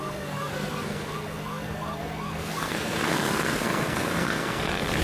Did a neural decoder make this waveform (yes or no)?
yes